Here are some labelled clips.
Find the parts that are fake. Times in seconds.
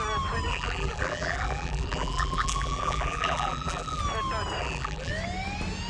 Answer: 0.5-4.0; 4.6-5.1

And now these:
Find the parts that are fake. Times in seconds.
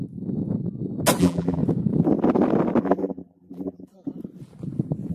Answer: 1.2-1.6; 2.8-3.9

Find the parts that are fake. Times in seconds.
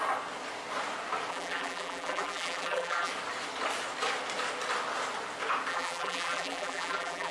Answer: 1.3-3.1; 5.7-7.3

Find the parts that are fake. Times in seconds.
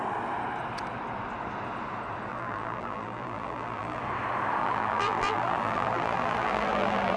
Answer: 2.3-4.0; 4.6-7.2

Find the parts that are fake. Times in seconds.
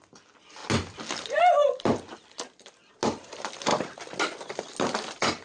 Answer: 1.6-2.9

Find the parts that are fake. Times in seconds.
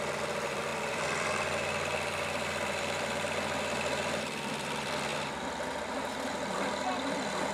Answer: 0.0-5.1; 5.8-7.5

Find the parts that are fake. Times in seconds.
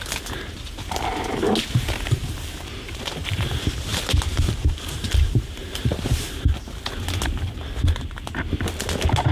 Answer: 2.2-3.0; 3.9-6.5